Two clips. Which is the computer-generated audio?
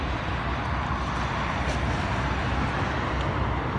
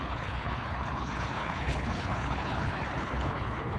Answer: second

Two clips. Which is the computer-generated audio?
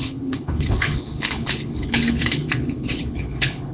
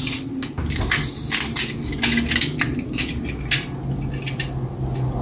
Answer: first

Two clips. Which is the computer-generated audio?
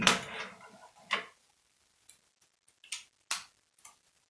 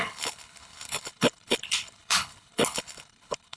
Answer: second